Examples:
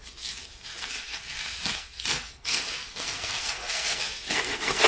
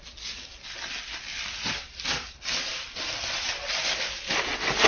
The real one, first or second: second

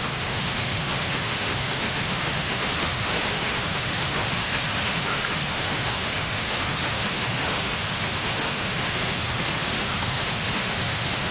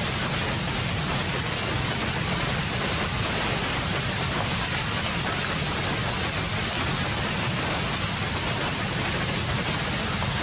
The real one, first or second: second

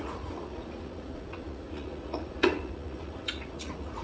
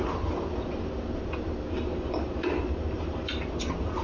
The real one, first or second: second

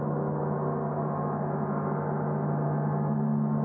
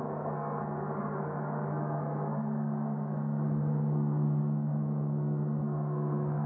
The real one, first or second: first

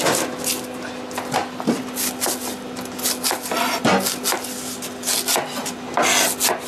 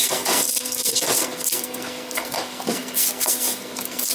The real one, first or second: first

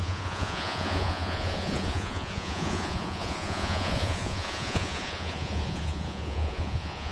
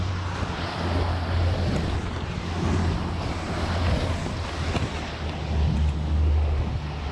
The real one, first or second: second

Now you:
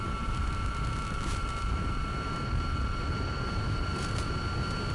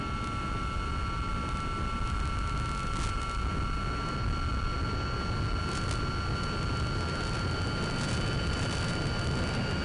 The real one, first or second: second